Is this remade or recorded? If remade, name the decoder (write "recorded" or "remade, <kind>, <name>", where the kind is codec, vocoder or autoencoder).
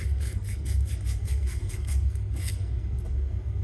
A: remade, codec, SNAC